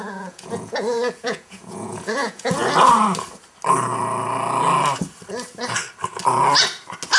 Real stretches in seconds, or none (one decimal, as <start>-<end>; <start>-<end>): 2.6-7.2